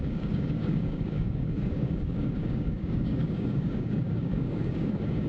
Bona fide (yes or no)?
no